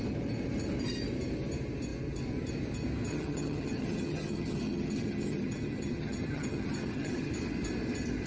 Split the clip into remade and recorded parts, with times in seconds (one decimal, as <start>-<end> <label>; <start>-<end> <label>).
0.0-3.1 recorded; 3.1-7.3 remade; 7.3-8.3 recorded